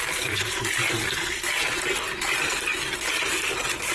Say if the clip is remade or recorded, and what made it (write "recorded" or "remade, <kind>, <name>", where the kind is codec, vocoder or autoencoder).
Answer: remade, vocoder, BigVGAN v2